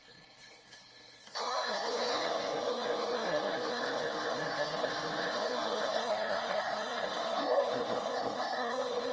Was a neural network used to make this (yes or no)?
yes